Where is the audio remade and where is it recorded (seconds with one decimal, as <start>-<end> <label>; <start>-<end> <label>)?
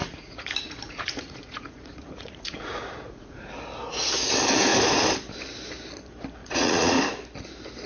0.0-3.5 remade; 3.5-6.4 recorded; 6.4-7.0 remade; 7.0-7.9 recorded